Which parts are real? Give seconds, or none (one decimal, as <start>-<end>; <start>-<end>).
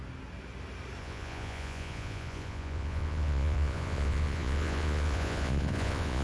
0.0-1.0